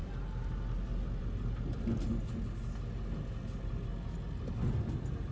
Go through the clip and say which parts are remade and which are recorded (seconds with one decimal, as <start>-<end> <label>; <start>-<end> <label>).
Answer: 0.0-5.3 recorded